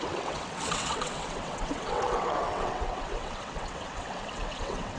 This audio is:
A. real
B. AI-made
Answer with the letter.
B